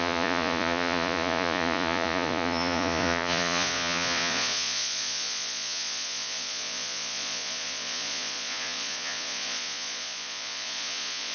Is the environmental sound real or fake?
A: fake